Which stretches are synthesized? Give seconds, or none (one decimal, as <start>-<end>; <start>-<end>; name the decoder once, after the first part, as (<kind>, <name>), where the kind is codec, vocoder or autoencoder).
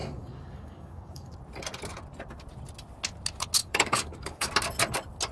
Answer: 0.0-1.3 (codec, DAC); 3.6-4.5